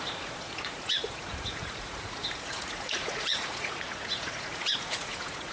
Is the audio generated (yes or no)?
yes